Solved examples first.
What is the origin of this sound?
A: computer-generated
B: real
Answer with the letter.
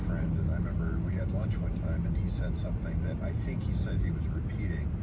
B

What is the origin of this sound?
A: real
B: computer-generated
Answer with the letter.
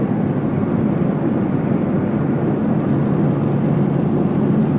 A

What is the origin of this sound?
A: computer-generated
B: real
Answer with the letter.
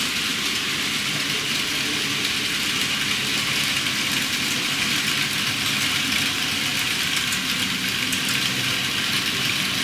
B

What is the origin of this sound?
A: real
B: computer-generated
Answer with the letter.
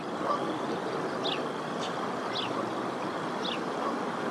A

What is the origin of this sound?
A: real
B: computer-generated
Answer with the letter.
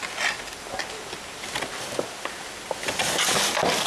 A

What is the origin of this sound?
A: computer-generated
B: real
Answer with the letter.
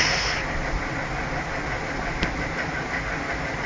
B